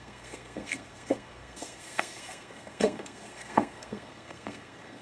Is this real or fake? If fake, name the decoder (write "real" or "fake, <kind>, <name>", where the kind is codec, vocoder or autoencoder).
fake, codec, SNAC